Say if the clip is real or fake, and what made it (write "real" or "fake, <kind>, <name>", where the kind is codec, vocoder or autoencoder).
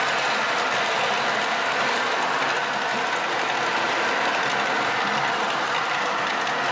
real